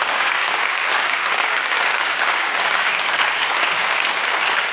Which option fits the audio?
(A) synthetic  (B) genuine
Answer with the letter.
A